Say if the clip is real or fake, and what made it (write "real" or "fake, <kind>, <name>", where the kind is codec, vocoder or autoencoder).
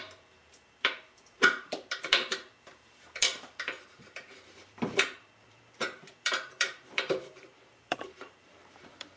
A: fake, vocoder, BigVGAN v2